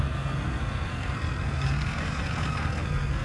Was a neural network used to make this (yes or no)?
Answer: yes